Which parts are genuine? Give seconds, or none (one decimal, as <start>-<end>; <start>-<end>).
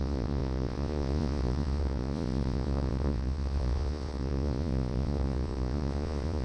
none